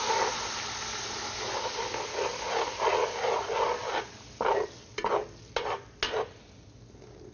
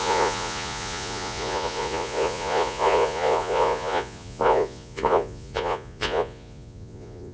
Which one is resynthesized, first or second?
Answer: second